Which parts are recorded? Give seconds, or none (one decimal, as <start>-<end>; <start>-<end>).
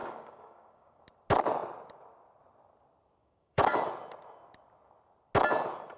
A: 1.0-3.2; 3.8-6.0